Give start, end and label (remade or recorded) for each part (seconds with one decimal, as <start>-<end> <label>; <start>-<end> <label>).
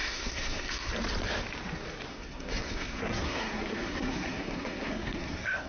0.0-0.9 remade; 0.9-2.1 recorded; 2.1-5.7 remade